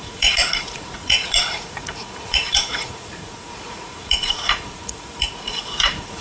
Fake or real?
fake